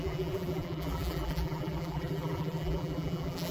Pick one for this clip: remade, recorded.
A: remade